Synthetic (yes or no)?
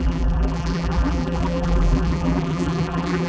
yes